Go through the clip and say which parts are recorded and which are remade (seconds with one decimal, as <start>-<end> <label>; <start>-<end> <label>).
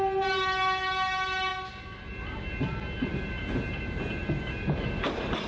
0.0-5.5 recorded